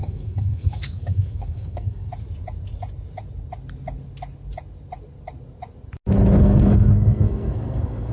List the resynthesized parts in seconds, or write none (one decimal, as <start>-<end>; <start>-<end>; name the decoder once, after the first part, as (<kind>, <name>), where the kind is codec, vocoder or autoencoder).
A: 0.0-2.1 (codec, SNAC); 6.4-8.1